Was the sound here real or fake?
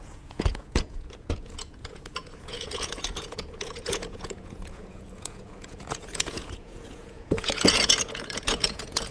fake